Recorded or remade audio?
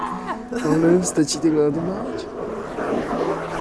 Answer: recorded